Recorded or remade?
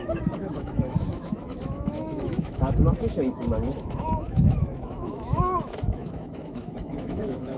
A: remade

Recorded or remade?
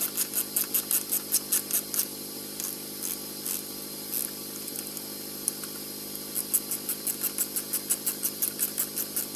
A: recorded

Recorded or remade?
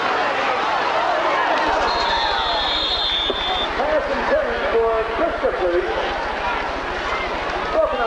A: recorded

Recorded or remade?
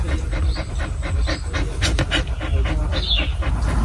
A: recorded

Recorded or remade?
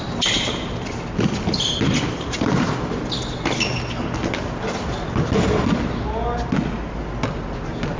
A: recorded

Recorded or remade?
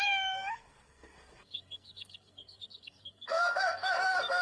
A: remade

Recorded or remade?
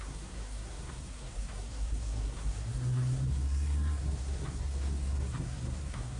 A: remade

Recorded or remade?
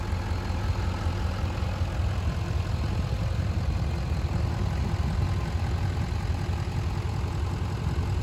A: recorded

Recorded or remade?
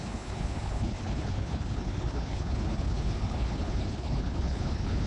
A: remade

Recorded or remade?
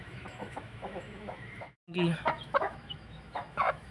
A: remade